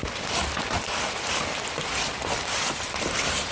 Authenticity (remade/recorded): recorded